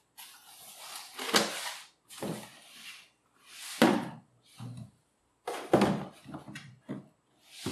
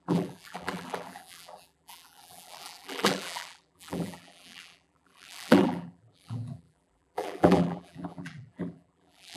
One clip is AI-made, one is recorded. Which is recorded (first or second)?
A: first